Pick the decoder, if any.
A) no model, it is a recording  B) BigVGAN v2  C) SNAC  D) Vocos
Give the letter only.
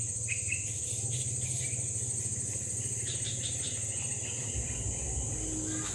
A